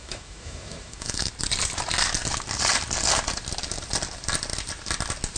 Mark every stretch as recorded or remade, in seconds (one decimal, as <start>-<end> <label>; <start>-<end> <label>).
0.0-1.3 remade; 1.3-5.4 recorded